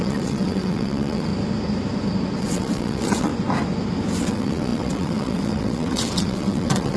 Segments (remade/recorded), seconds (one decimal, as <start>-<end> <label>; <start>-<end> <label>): 0.0-1.3 remade; 1.3-2.4 recorded; 2.4-3.3 remade; 3.3-4.2 recorded; 4.2-7.0 remade